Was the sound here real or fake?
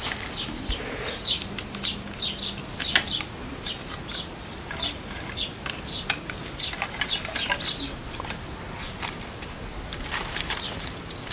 real